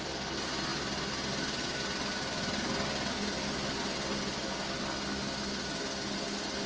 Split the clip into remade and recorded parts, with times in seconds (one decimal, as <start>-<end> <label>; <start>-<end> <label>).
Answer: 0.0-0.7 recorded; 0.7-1.3 remade; 1.3-6.7 recorded